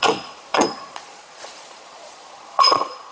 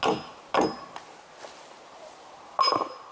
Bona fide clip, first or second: second